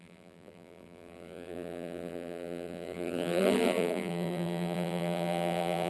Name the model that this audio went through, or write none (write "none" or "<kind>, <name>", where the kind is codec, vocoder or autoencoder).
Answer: vocoder, BigVGAN v2